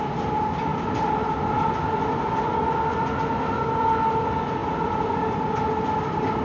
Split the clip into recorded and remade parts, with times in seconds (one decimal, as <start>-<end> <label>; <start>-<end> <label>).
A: 0.0-6.4 recorded